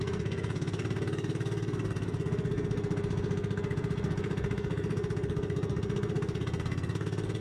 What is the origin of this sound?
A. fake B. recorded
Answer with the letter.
A